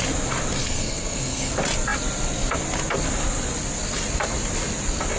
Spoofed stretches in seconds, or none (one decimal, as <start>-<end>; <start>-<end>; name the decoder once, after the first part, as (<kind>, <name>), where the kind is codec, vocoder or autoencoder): 0.6-1.5 (codec, SNAC)